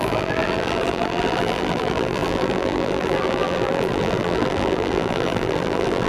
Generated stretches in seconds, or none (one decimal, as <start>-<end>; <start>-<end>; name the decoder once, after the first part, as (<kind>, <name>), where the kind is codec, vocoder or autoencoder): 0.0-6.1 (vocoder, BigVGAN v2)